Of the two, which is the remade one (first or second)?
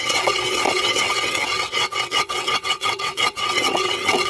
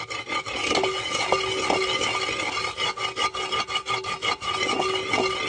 first